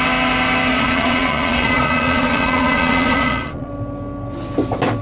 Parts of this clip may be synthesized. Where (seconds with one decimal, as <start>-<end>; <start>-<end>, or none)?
0.7-3.7